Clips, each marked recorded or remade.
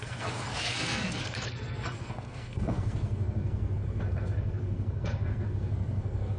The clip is remade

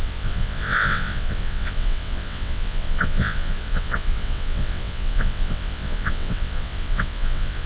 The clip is remade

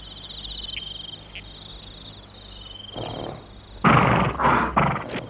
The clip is recorded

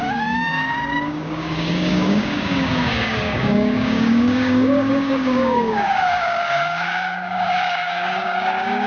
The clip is remade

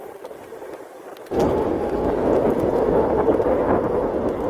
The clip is recorded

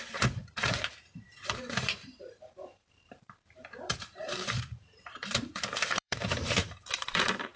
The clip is remade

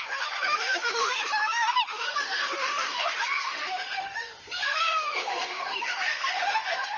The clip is remade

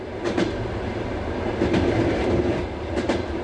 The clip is recorded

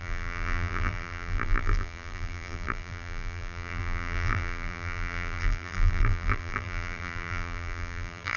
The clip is remade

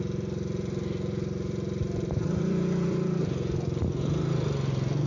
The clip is remade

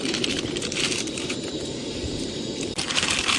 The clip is remade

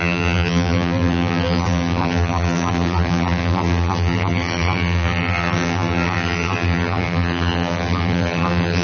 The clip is remade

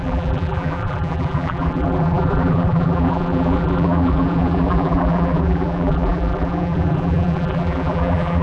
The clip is remade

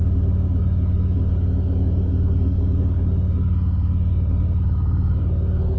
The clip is recorded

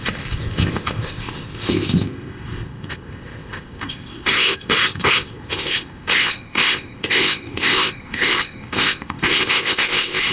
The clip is remade